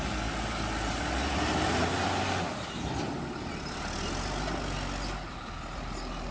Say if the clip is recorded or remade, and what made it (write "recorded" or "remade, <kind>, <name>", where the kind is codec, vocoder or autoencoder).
recorded